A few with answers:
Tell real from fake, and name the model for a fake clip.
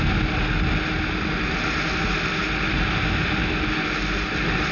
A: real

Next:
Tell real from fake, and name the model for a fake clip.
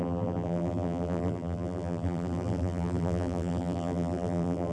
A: fake, vocoder, BigVGAN v2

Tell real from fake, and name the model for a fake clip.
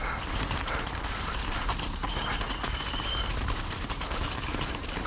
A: fake, vocoder, BigVGAN v2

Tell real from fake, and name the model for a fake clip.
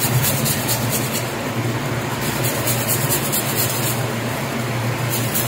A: real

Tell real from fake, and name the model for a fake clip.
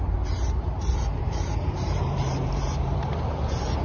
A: fake, vocoder, BigVGAN v2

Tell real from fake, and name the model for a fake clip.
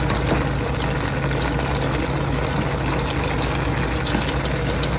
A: real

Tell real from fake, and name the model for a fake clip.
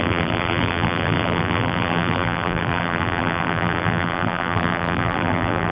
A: fake, vocoder, BigVGAN v2